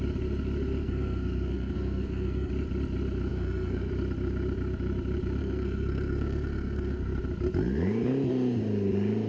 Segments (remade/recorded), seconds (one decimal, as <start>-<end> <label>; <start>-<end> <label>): 0.0-0.8 recorded; 0.8-2.5 remade; 2.5-3.3 recorded; 3.3-3.9 remade; 3.9-5.4 recorded; 5.4-7.2 remade; 7.2-9.3 recorded